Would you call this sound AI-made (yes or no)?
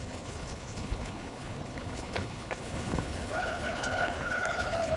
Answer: yes